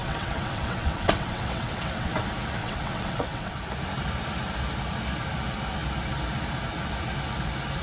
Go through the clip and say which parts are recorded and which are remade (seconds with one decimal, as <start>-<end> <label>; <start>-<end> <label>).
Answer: 0.0-2.2 remade; 2.2-2.6 recorded; 2.6-3.5 remade; 3.5-7.8 recorded